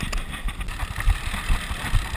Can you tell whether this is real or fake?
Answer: real